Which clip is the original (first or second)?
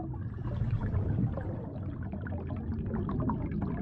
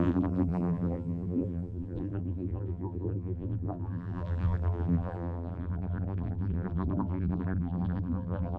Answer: first